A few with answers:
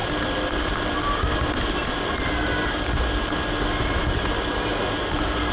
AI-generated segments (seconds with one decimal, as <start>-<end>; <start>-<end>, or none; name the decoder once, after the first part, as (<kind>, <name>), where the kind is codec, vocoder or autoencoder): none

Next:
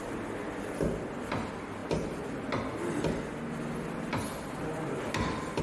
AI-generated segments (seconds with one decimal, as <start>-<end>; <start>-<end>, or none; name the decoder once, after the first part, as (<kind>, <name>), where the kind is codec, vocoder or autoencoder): none

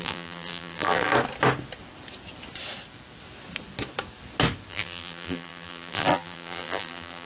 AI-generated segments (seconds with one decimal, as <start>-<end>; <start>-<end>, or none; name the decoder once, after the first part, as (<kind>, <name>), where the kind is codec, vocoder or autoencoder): 0.0-1.1 (vocoder, BigVGAN v2); 4.7-7.3

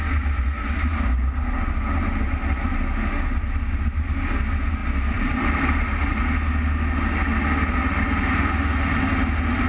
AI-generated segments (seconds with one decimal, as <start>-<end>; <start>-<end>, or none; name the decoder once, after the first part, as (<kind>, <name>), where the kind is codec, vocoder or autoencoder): 4.8-6.2 (vocoder, BigVGAN v2)